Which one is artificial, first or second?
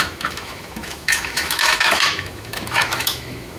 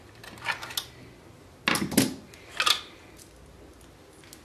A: first